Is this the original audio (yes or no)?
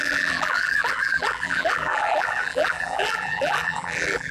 no